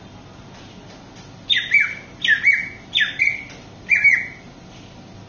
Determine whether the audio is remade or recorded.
recorded